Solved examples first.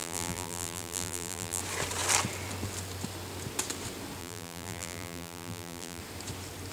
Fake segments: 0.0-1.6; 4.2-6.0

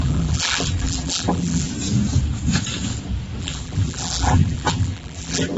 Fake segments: 0.0-1.7; 3.4-5.6

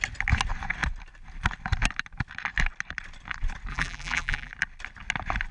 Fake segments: 3.7-4.5

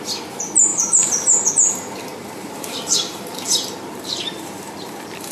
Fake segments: 0.7-1.5; 2.1-5.3

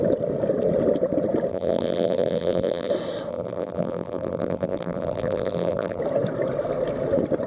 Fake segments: 1.5-2.9; 3.3-6.0

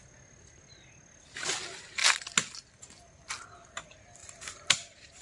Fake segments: 4.2-5.2